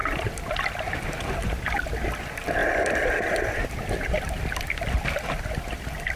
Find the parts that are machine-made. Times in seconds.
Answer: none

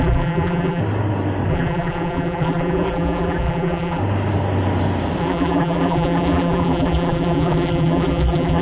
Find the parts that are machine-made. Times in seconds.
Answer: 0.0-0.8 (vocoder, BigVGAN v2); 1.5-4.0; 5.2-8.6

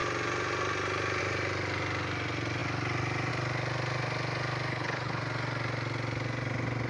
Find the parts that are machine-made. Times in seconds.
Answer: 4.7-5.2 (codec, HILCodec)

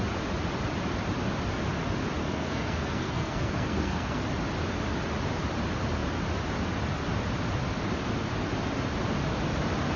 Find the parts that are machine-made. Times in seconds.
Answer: 2.2-4.2 (codec, SNAC)

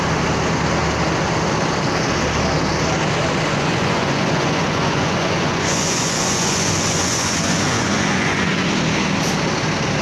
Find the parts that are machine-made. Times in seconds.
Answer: 3.5-8.7 (vocoder, Vocos)

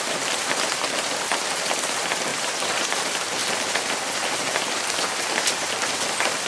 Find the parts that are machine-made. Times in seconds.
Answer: 2.3-2.9 (vocoder, BigVGAN v2)

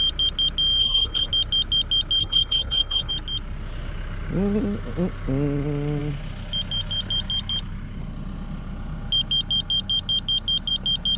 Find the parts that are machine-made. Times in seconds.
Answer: 0.8-1.3 (codec, HILCodec); 2.2-3.1